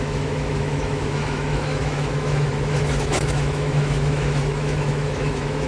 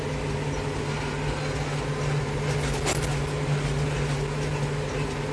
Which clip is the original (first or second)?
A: second